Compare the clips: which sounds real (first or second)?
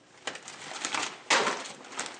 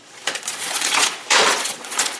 first